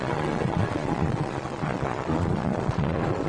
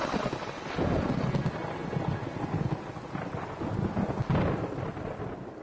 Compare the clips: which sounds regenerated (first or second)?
first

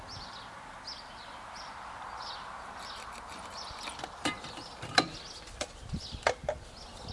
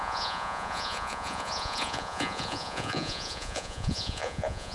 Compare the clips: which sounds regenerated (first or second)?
second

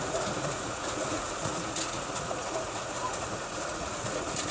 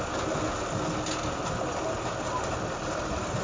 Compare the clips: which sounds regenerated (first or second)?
first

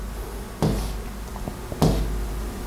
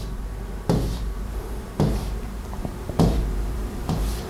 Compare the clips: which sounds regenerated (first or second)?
second